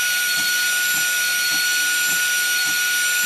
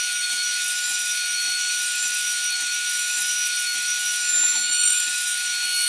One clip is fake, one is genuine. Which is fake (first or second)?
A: second